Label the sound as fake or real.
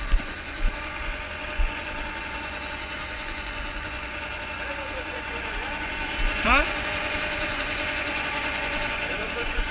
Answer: fake